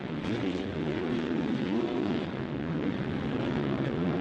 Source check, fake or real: fake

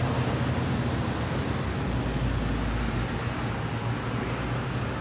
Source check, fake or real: real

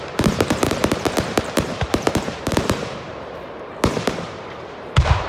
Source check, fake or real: fake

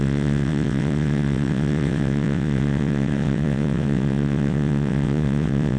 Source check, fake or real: fake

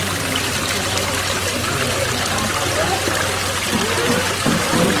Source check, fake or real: real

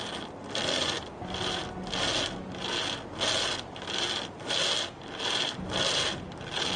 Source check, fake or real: real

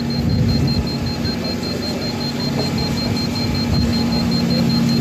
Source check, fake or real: real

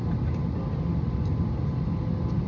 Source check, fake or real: real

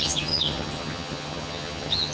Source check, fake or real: fake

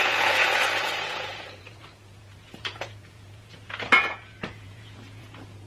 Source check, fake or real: fake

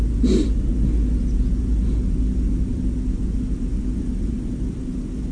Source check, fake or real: real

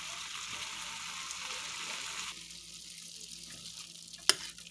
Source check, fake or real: real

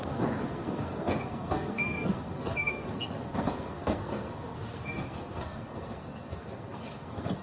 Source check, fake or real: fake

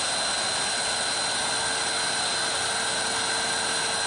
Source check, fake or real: real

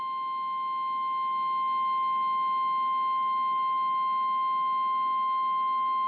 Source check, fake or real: real